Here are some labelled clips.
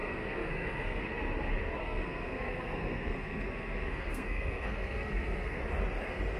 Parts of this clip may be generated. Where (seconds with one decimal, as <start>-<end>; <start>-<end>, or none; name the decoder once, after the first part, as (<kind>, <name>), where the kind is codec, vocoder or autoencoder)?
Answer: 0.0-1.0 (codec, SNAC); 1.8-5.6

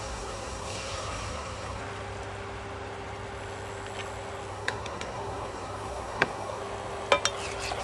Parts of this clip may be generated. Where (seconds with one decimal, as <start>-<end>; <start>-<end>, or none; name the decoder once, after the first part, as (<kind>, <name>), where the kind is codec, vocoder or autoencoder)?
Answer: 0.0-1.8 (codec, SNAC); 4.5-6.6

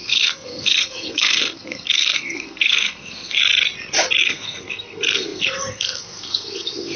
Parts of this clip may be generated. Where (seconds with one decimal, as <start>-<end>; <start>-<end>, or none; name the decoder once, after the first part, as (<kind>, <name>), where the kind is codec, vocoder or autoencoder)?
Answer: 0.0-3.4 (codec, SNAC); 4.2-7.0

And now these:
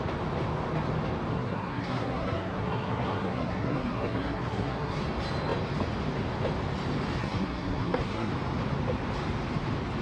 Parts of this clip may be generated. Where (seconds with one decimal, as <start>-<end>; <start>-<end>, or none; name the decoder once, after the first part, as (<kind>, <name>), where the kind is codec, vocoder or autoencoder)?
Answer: 1.3-5.0 (codec, SNAC); 7.2-8.3

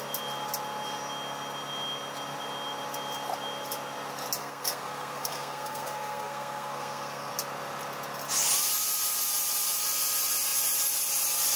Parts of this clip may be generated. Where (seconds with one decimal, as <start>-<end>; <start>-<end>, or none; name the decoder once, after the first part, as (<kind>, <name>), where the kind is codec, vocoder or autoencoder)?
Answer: 4.4-7.3 (codec, SNAC)